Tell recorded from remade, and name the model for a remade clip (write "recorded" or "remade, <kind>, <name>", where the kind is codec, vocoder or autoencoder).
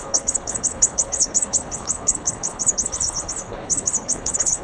remade, codec, HILCodec